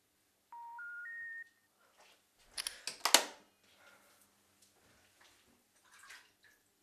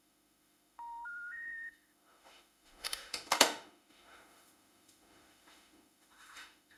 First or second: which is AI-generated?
second